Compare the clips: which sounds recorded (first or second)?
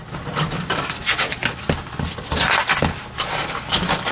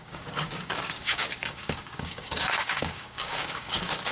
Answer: first